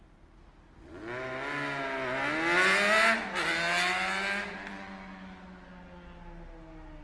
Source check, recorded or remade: recorded